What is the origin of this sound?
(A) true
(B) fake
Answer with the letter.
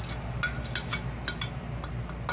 A